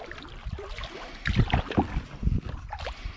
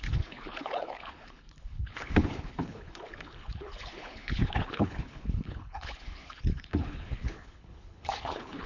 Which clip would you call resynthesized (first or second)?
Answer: second